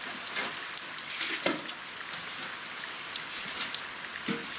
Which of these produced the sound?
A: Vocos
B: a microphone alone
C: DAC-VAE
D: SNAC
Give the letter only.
B